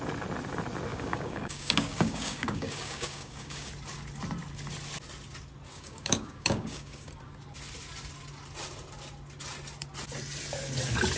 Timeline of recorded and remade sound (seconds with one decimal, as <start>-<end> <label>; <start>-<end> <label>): 0.0-0.9 recorded; 0.9-3.7 remade; 3.7-5.7 recorded; 5.7-7.1 remade; 7.1-11.2 recorded